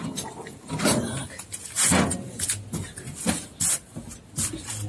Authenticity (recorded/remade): recorded